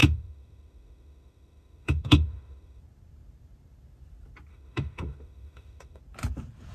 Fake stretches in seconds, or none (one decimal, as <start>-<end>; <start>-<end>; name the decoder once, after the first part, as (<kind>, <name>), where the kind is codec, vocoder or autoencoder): 0.0-2.8 (autoencoder, DAC-VAE); 4.5-6.0